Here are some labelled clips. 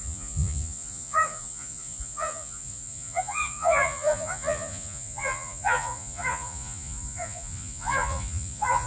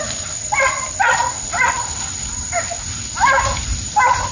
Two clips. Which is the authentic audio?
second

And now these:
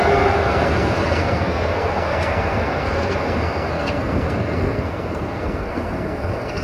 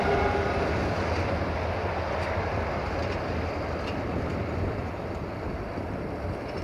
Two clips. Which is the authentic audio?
second